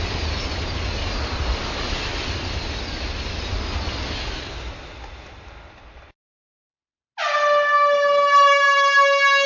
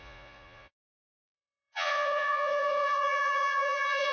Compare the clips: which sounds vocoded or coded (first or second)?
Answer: second